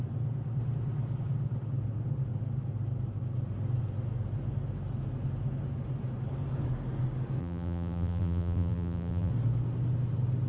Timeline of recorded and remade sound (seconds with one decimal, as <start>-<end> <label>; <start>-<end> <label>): 0.0-7.4 recorded; 7.4-9.3 remade; 9.3-10.5 recorded